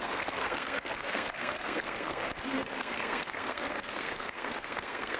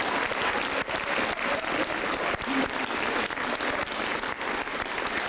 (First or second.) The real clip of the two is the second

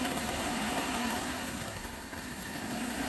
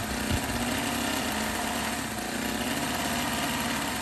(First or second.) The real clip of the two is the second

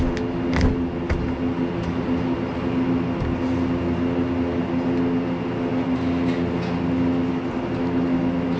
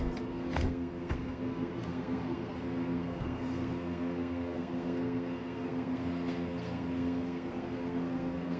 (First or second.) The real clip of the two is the first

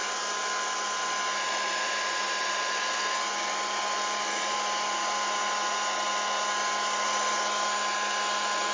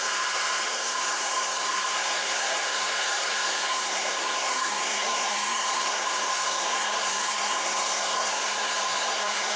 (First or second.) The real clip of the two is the first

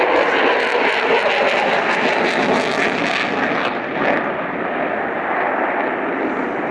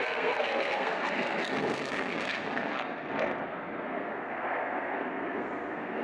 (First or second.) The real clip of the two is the first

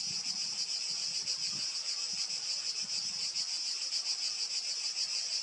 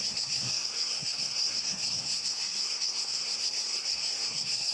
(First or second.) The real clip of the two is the first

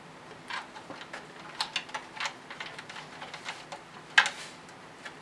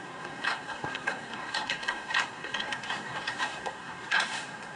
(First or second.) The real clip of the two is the first